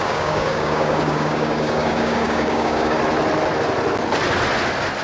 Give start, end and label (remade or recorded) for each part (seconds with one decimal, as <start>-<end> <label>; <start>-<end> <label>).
0.0-3.0 remade; 3.0-5.0 recorded